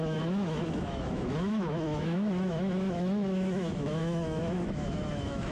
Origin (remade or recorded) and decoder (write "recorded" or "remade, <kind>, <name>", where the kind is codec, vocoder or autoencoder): remade, autoencoder, DAC-VAE